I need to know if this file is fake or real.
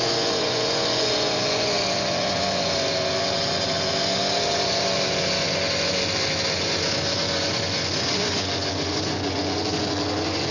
fake